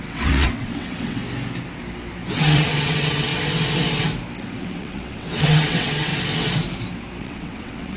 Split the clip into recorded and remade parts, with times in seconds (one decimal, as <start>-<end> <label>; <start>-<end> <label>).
0.0-1.2 remade; 1.2-2.3 recorded; 2.3-3.3 remade; 3.3-4.4 recorded; 4.4-6.1 remade; 6.1-7.2 recorded; 7.2-8.0 remade